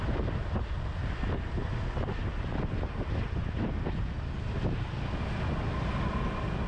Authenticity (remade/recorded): recorded